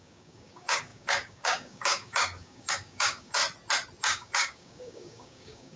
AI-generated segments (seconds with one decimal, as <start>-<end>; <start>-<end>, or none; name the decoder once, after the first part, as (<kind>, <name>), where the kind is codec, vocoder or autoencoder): 0.0-3.4 (codec, DAC); 4.0-5.8